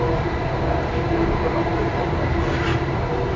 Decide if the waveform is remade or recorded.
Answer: recorded